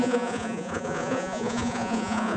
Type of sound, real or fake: fake